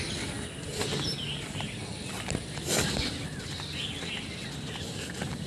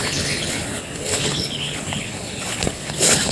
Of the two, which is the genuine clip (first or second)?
first